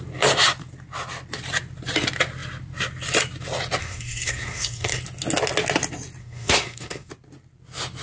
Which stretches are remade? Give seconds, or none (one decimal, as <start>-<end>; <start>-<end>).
3.8-5.0; 6.2-7.1